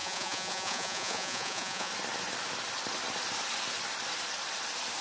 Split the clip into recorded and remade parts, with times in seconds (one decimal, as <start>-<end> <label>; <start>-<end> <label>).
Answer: 0.0-1.9 remade; 1.9-5.0 recorded